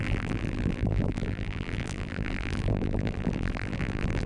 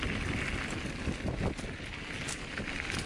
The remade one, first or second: first